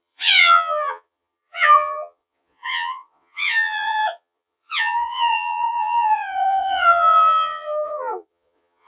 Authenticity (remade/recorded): remade